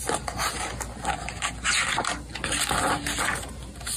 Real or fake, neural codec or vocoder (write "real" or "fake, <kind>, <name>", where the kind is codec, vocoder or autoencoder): real